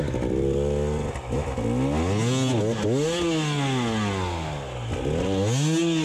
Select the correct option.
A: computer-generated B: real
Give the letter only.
B